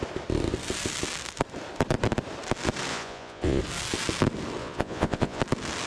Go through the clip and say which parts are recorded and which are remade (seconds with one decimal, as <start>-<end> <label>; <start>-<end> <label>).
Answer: 0.0-2.9 recorded; 2.9-3.6 remade; 3.6-4.6 recorded; 4.6-5.4 remade; 5.4-5.9 recorded